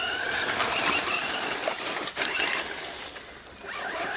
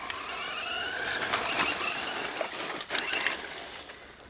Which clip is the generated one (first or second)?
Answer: first